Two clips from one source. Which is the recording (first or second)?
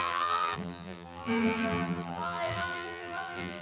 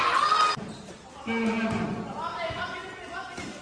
second